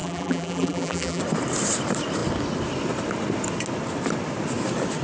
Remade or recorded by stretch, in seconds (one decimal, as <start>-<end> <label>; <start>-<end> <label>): 0.0-1.2 remade; 1.2-5.0 recorded